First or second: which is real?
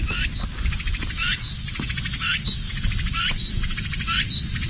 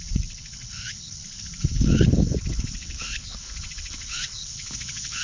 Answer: first